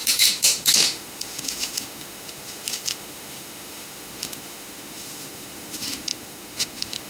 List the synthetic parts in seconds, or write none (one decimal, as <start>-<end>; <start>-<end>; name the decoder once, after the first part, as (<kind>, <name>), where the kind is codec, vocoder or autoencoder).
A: 0.0-7.1 (autoencoder, DAC-VAE)